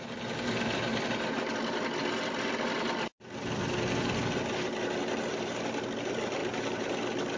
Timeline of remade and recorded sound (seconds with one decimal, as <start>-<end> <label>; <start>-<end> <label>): 0.0-6.4 recorded; 6.4-6.9 remade; 6.9-7.4 recorded